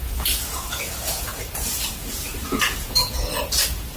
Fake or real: fake